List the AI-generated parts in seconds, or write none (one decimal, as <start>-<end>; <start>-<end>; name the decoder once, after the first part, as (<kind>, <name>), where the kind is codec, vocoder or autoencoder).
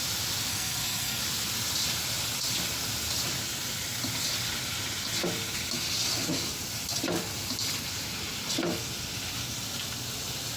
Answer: 0.5-1.2 (codec, SNAC)